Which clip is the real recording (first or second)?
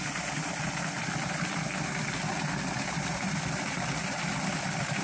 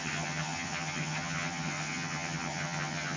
first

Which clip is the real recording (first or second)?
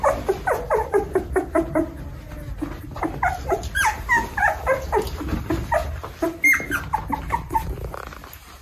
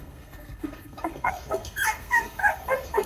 first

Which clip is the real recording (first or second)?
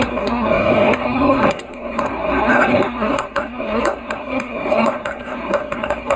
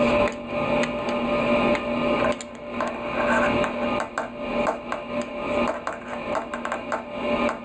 second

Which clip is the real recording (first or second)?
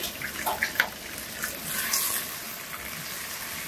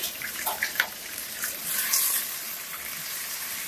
first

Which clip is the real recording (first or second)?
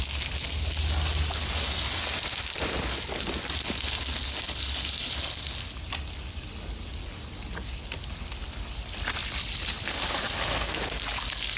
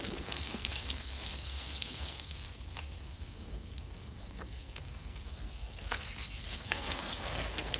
first